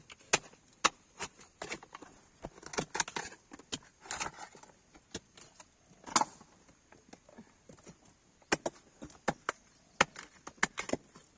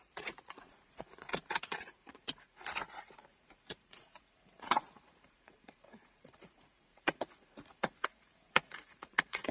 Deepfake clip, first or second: second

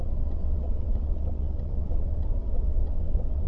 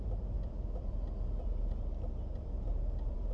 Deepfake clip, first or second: first